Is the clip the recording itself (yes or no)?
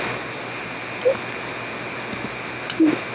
yes